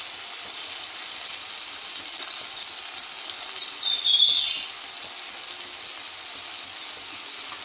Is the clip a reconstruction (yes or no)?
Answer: no